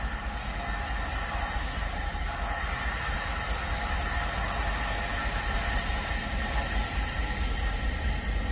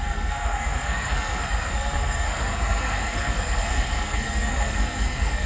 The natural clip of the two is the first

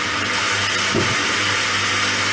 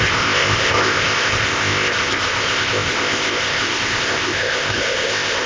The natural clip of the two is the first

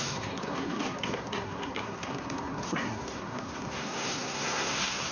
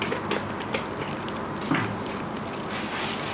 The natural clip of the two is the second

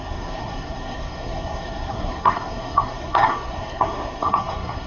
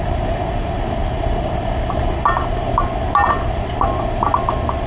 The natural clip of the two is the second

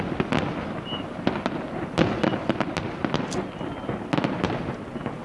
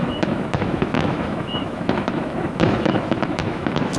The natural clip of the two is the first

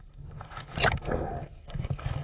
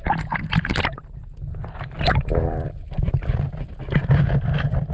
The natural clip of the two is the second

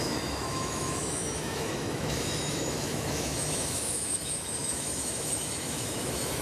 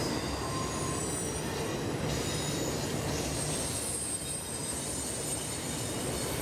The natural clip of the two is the second